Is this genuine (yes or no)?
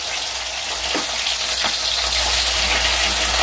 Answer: yes